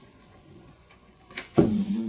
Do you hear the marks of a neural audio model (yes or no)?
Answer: yes